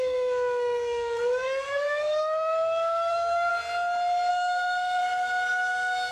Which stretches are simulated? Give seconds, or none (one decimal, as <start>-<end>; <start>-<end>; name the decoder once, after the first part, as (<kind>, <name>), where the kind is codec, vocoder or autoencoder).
0.0-3.5 (codec, SNAC); 4.3-5.0